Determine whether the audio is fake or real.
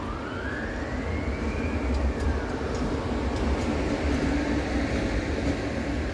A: real